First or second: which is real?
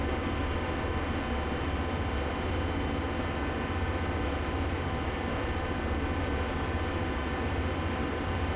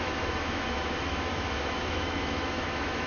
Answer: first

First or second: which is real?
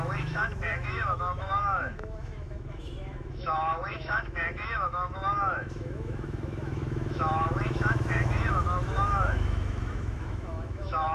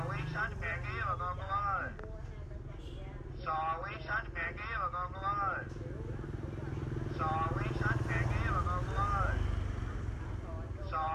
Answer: second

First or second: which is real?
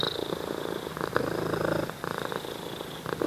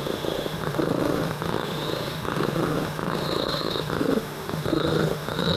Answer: first